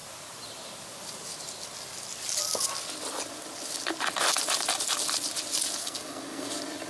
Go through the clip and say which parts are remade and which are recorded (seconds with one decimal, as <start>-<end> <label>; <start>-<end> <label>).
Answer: 0.0-5.8 recorded; 5.8-6.5 remade; 6.5-6.9 recorded